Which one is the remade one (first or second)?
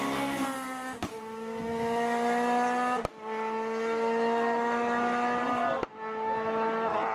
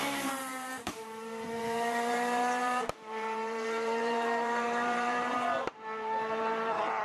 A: second